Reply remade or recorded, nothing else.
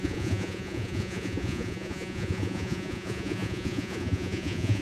remade